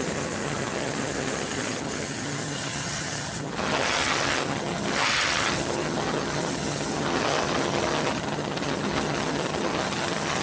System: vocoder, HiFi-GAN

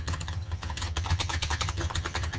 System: vocoder, HiFi-GAN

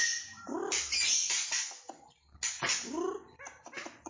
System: none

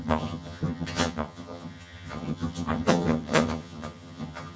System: vocoder, HiFi-GAN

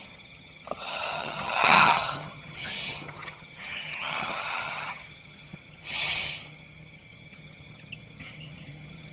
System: vocoder, HiFi-GAN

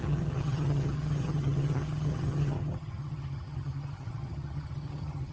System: vocoder, HiFi-GAN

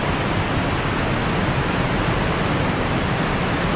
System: none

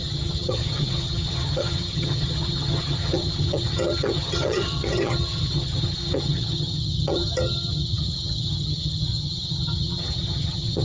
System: vocoder, HiFi-GAN